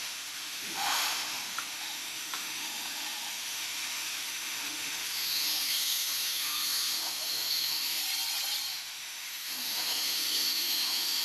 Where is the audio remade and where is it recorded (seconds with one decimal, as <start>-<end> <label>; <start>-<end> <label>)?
0.0-8.0 remade; 8.0-8.7 recorded; 8.7-11.2 remade